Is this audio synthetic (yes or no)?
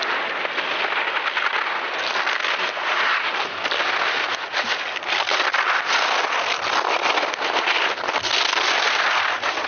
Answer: no